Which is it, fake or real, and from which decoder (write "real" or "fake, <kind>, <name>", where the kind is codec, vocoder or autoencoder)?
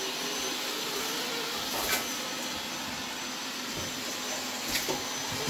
real